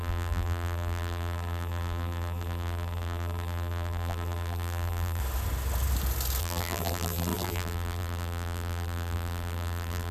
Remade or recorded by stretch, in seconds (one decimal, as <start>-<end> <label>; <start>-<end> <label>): 0.0-5.2 remade; 5.2-6.4 recorded; 6.4-10.1 remade